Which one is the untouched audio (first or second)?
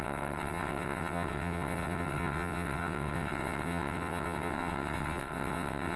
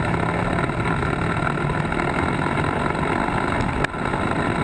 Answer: second